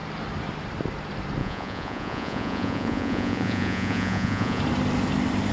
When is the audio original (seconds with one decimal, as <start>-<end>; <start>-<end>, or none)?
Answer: 0.0-1.4; 4.6-5.5